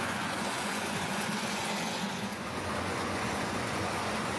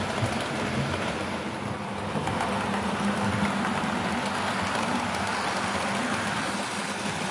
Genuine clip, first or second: second